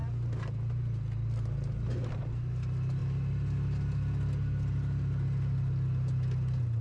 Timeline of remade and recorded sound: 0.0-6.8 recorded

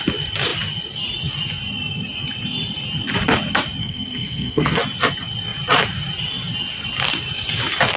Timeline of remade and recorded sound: 0.0-3.8 recorded; 3.8-4.8 remade; 4.8-8.0 recorded